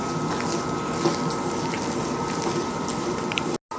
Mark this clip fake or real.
real